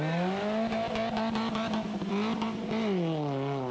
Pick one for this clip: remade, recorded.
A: recorded